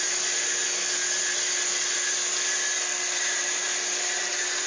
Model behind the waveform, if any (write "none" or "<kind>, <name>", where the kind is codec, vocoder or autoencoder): none